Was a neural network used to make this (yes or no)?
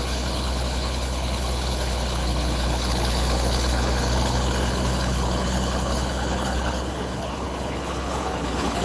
yes